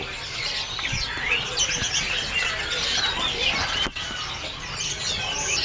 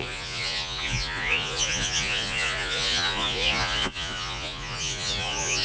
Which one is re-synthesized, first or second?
second